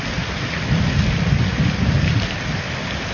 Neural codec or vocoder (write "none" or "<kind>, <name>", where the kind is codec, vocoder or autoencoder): none